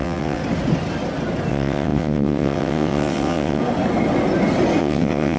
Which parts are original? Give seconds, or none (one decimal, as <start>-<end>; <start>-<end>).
0.4-1.5; 3.6-4.8